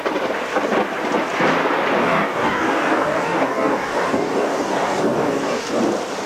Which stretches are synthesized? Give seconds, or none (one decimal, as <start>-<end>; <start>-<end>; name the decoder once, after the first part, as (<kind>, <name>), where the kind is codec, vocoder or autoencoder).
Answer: 2.0-5.8 (codec, DAC)